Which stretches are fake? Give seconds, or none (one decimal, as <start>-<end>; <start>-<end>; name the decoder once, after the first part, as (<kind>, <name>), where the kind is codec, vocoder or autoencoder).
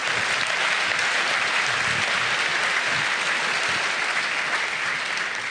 none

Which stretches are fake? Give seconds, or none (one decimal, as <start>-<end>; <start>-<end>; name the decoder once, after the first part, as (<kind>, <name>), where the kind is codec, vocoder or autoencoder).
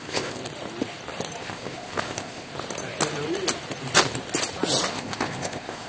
0.0-0.4 (codec, ZipCodec); 1.4-2.5; 4.9-5.9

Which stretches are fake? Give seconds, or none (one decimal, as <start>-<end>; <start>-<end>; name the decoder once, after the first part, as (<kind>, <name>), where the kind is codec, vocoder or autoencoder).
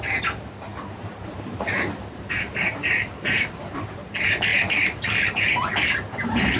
0.0-6.6 (vocoder, BigVGAN v2)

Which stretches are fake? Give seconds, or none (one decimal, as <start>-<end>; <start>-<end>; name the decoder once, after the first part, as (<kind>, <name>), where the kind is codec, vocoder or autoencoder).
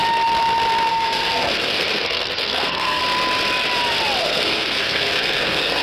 0.9-3.0 (codec, SNAC); 4.2-5.8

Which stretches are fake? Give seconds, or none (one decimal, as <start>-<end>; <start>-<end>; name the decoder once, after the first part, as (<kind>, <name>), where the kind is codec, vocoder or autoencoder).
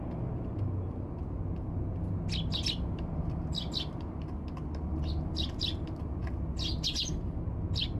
none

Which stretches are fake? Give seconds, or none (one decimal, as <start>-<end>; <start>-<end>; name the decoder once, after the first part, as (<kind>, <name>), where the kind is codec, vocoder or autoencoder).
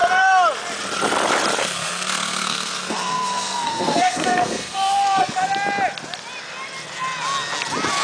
1.6-5.3 (codec, SNAC)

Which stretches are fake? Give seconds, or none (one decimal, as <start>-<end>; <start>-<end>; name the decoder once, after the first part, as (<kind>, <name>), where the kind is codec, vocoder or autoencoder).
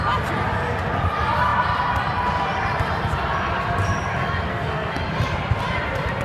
4.5-5.0 (codec, SNAC)